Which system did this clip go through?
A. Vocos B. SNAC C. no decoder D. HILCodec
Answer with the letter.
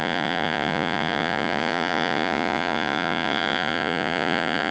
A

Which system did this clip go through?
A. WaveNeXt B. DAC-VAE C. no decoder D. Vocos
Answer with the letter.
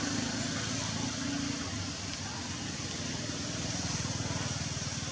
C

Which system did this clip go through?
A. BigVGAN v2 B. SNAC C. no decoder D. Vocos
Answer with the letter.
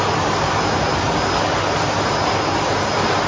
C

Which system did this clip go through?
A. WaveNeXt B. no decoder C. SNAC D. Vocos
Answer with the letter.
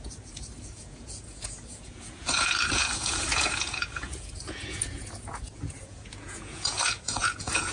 D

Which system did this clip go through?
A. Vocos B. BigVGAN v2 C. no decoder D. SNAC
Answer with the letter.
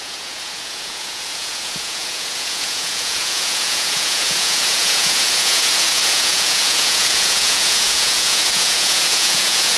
A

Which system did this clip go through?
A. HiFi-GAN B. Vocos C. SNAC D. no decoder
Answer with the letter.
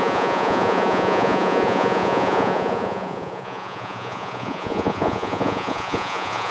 B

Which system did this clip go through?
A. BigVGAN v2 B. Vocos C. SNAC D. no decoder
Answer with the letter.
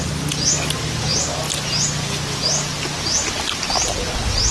D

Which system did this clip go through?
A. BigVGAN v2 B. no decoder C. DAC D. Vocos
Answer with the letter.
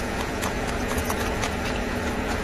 D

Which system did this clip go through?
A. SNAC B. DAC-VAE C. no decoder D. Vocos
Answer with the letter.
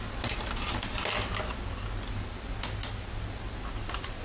C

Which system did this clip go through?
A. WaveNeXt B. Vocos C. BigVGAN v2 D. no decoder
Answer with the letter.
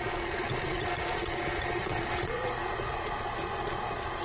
B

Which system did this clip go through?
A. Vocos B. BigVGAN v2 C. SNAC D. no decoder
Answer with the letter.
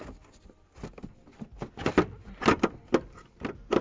D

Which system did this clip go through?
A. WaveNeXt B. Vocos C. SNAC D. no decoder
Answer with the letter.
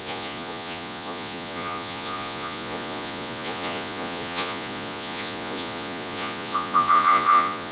B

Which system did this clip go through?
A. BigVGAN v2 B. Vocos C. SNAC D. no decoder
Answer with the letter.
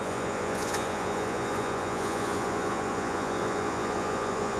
B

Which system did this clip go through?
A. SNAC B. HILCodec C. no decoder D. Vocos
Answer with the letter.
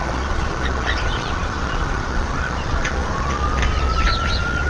D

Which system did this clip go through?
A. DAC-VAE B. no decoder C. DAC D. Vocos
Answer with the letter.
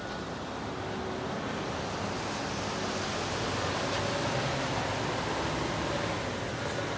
B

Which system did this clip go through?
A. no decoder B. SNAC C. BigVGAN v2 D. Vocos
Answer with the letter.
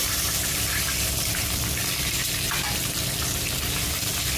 A